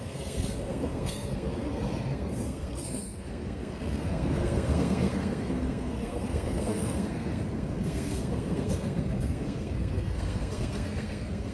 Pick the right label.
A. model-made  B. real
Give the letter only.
A